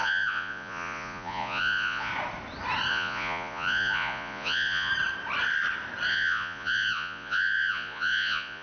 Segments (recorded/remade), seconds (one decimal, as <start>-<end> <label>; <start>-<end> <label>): 0.0-2.1 remade; 2.1-2.9 recorded; 2.9-4.9 remade; 4.9-6.1 recorded; 6.1-8.6 remade